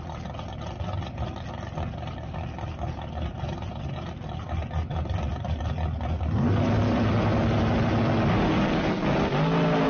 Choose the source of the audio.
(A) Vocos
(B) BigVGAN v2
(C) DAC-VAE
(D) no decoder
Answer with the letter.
D